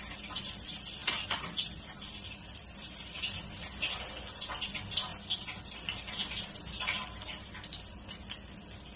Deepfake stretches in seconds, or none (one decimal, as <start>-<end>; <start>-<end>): none